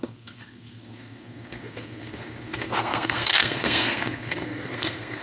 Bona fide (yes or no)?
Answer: no